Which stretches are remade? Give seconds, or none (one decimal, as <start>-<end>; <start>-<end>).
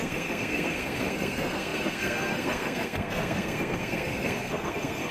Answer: 0.0-5.1